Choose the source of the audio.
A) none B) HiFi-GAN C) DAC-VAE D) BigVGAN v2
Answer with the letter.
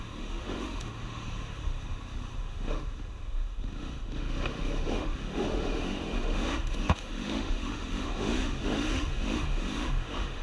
C